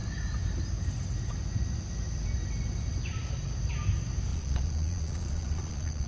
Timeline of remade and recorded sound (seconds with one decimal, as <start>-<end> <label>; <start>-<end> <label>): 0.0-4.3 recorded; 4.3-6.1 remade

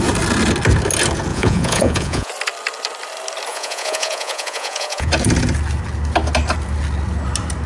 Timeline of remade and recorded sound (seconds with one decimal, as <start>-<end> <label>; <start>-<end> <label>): 0.0-1.3 recorded; 1.3-2.3 remade; 2.3-3.5 recorded; 3.5-5.1 remade; 5.1-7.7 recorded